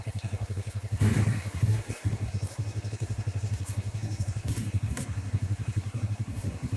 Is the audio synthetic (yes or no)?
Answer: yes